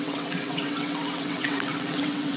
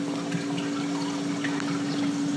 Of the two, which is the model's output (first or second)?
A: first